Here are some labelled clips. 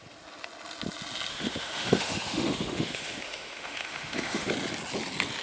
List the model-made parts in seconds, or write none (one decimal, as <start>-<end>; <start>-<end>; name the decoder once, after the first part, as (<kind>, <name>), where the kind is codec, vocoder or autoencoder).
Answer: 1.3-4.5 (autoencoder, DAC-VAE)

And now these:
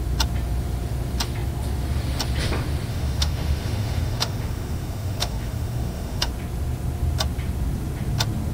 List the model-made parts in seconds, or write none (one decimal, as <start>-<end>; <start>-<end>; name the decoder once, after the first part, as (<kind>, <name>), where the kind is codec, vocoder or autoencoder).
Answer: 2.9-6.3 (autoencoder, DAC-VAE)

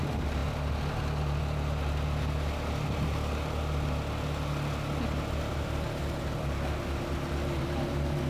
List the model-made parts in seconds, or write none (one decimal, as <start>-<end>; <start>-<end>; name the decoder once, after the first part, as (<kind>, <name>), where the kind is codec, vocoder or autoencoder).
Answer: none